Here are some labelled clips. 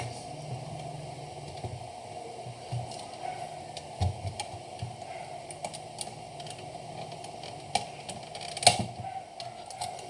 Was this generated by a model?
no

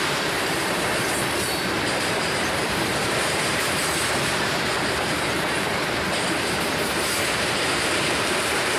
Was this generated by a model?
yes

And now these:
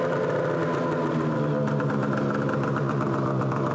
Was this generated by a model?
no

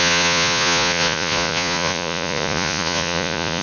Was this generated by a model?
yes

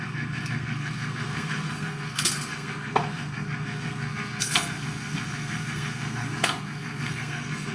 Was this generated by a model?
yes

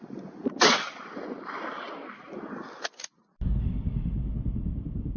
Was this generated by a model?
no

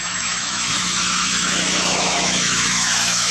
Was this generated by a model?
yes